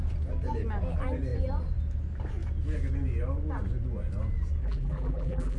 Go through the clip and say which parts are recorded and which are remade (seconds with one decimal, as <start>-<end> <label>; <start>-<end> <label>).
0.0-4.6 recorded; 4.6-5.6 remade